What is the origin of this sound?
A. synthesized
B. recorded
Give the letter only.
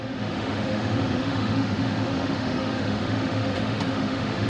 A